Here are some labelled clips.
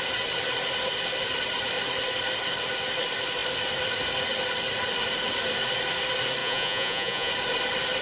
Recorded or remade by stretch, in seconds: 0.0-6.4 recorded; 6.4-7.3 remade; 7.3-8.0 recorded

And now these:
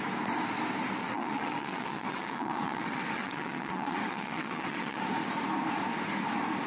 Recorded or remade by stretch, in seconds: 0.0-1.0 recorded; 1.0-5.0 remade; 5.0-6.7 recorded

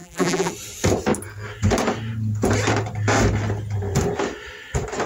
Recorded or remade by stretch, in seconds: 0.0-0.5 remade; 0.5-5.1 recorded

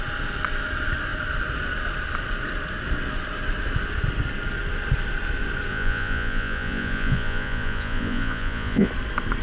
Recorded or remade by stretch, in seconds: 0.0-5.7 recorded; 5.7-8.9 remade; 8.9-9.4 recorded

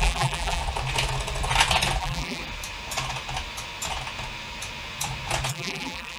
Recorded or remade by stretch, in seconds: 0.0-0.6 remade; 0.6-2.0 recorded; 2.0-2.4 remade; 2.4-5.5 recorded; 5.5-6.2 remade